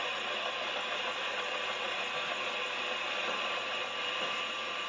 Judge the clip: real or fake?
real